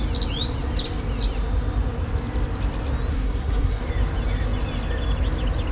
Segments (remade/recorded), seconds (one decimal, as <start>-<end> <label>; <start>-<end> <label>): 0.0-3.1 recorded; 3.1-3.8 remade; 3.8-5.7 recorded

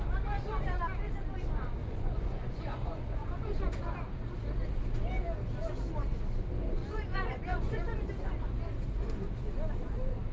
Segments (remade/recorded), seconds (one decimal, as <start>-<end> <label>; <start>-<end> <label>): 0.0-1.8 recorded; 1.8-3.5 remade; 3.5-6.8 recorded; 6.8-8.0 remade; 8.0-10.3 recorded

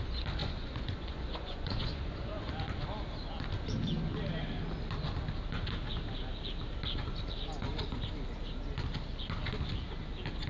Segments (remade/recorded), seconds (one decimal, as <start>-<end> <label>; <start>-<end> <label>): 0.0-0.4 recorded; 0.4-2.5 remade; 2.5-10.5 recorded